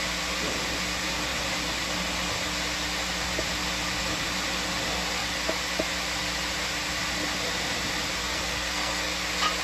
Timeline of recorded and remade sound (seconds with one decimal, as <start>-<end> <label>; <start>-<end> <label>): 0.0-8.2 recorded; 8.2-9.1 remade; 9.1-9.6 recorded